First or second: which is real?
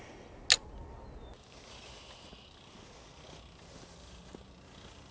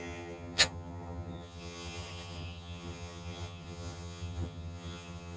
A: first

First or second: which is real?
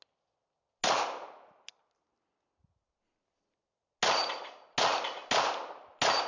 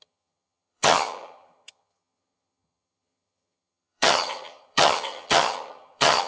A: first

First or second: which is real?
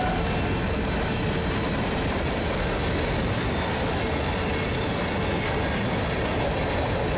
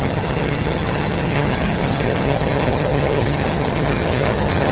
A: first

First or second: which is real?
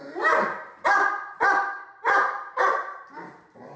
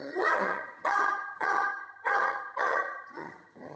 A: first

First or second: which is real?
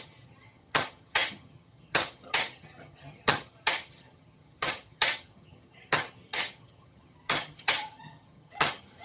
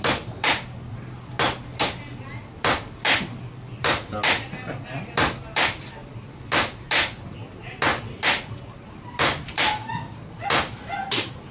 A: second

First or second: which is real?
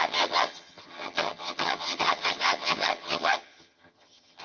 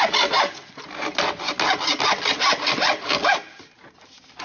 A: second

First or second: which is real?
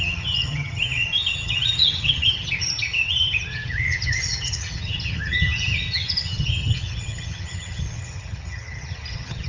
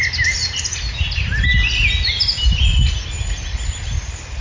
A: second